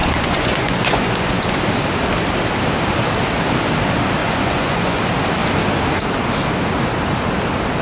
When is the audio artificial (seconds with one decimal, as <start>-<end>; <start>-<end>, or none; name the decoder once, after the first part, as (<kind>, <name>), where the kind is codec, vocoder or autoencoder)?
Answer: 0.0-1.6 (vocoder, Vocos); 4.2-5.0